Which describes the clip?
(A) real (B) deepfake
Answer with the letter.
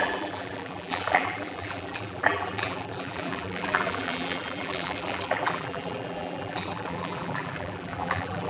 B